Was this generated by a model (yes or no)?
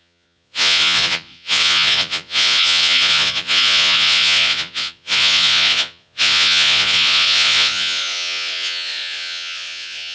yes